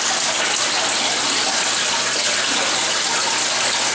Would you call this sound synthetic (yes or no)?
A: no